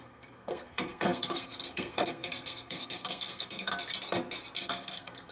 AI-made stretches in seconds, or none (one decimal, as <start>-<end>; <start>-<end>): 0.0-3.7; 4.6-5.3

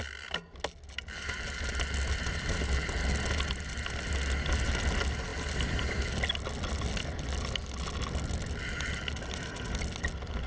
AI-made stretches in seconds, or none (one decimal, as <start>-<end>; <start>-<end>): none

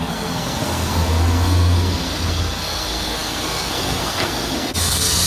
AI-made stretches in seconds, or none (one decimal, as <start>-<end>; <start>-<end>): 0.0-5.3

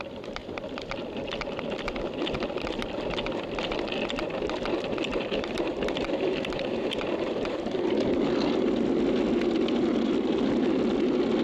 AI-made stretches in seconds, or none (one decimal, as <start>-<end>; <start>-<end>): 5.1-7.9

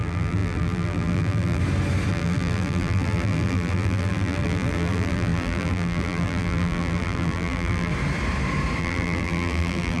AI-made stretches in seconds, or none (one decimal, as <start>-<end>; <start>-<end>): 0.0-1.6; 2.1-7.9; 8.8-10.0

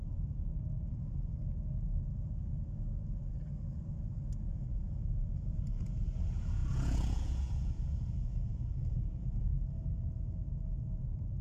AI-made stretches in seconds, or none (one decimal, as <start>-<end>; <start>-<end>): 0.0-0.5; 4.4-9.5

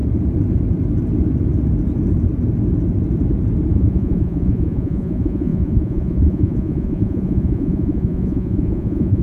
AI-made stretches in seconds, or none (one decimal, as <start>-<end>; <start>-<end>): 3.7-9.2